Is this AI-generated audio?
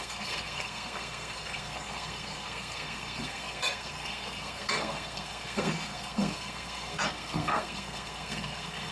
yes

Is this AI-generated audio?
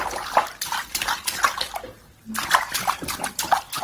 no